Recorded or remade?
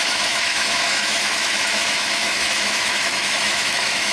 remade